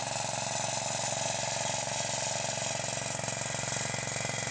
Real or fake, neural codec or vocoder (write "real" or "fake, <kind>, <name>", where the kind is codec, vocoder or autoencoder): real